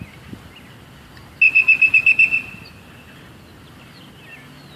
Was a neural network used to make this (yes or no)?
no